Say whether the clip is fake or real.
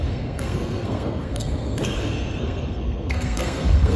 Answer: fake